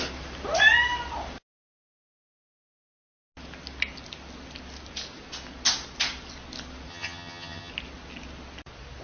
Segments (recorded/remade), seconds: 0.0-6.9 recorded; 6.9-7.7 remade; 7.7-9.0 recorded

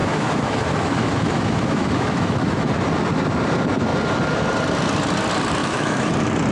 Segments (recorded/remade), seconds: 0.0-2.7 remade; 2.7-5.6 recorded; 5.6-6.1 remade; 6.1-6.5 recorded

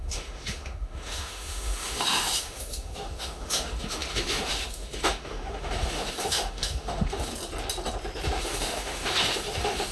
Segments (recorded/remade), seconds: 0.0-7.3 remade; 7.3-8.4 recorded; 8.4-9.9 remade

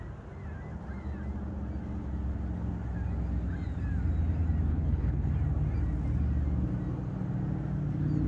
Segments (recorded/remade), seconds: 0.0-4.7 recorded; 4.7-5.3 remade; 5.3-8.3 recorded

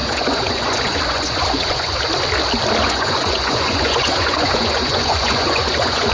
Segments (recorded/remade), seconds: 0.0-2.0 remade; 2.0-2.8 recorded; 2.8-6.1 remade